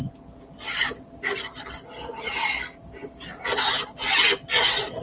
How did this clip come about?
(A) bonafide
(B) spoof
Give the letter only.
A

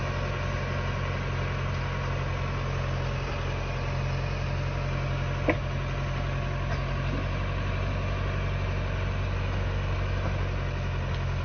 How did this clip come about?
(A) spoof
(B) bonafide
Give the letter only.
B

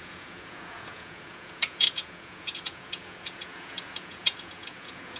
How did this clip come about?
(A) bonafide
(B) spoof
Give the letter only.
B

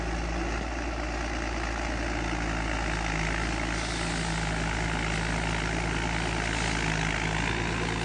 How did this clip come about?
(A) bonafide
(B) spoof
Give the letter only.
A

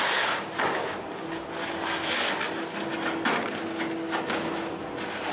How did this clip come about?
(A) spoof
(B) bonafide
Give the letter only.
B